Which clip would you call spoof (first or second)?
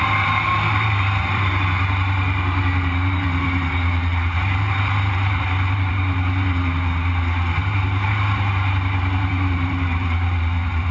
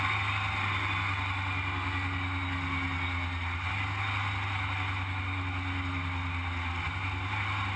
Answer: first